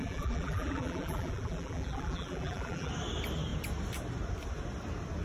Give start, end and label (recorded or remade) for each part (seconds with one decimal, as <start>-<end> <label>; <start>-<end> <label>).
0.0-2.9 remade; 2.9-5.2 recorded